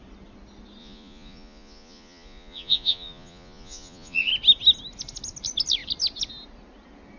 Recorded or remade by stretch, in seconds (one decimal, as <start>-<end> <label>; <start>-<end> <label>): 0.0-0.8 recorded; 0.8-4.3 remade; 4.3-7.2 recorded